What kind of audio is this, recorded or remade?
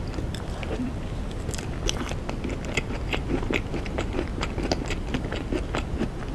recorded